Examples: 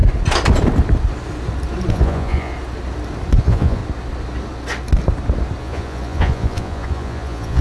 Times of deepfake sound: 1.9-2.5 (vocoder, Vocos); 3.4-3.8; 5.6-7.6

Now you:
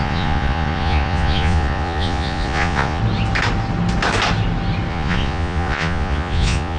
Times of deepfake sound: 0.0-3.0 (vocoder, Vocos); 4.9-6.8